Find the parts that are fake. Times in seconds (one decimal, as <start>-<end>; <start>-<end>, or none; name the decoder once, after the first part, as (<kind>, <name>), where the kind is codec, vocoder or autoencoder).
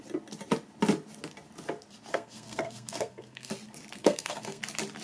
2.1-3.5 (codec, SNAC); 4.0-4.6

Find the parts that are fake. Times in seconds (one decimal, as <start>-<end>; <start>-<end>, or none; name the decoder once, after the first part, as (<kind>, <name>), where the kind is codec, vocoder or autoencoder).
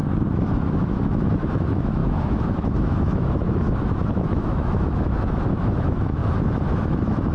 0.0-7.3 (autoencoder, DAC-VAE)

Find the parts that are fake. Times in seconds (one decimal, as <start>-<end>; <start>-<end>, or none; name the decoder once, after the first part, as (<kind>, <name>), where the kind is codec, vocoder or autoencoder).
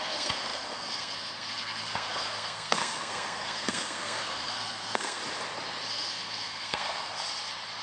0.0-5.2 (codec, SNAC); 5.9-7.1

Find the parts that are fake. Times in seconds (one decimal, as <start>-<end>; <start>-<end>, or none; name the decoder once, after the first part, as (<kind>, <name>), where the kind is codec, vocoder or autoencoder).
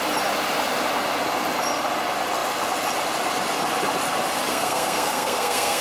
4.5-5.8 (codec, SNAC)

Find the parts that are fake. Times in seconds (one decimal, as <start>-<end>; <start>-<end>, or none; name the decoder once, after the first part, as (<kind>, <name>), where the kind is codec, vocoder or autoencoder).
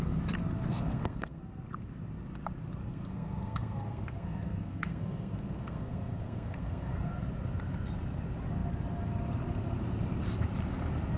0.7-1.4 (codec, SNAC); 2.9-7.1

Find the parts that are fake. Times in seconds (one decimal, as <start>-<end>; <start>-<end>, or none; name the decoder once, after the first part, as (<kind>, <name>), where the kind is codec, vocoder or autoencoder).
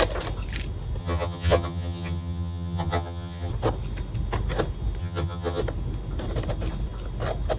1.0-3.5 (vocoder, HiFi-GAN); 5.0-5.6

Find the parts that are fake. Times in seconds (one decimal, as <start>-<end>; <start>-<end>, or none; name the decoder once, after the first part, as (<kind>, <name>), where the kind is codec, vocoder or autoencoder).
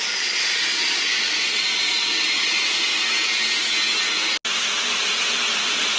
0.0-2.9 (vocoder, Vocos); 5.0-6.0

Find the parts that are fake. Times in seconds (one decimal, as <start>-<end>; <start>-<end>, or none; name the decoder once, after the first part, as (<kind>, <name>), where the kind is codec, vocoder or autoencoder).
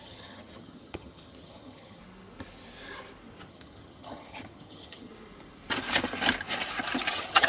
0.0-2.0 (vocoder, HiFi-GAN); 3.5-5.1; 7.1-7.5